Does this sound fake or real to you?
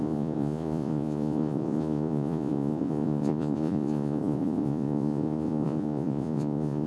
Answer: fake